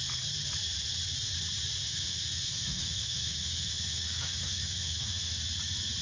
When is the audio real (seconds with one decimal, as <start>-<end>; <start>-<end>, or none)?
0.0-1.8; 5.4-6.0